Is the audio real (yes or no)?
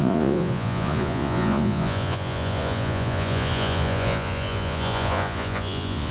no